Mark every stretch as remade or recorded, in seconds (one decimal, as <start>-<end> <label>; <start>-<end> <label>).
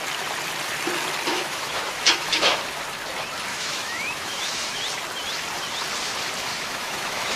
0.0-1.3 recorded; 1.3-2.6 remade; 2.6-3.5 recorded; 3.5-4.8 remade; 4.8-6.5 recorded; 6.5-7.4 remade